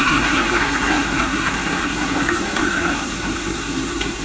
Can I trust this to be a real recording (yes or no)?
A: no